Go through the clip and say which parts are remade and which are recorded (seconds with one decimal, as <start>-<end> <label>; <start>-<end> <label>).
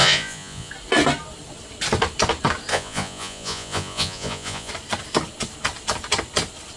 0.0-0.7 remade; 0.7-2.7 recorded; 2.7-4.7 remade; 4.7-6.8 recorded